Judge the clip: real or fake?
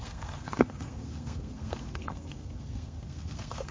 fake